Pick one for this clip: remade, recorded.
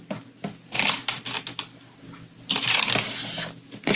recorded